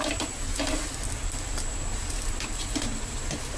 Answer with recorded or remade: recorded